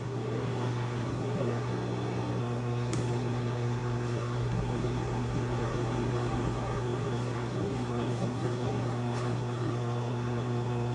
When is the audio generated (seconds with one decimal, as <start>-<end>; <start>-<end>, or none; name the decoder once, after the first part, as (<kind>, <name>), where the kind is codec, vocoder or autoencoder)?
0.0-1.7 (codec, SNAC); 2.4-10.9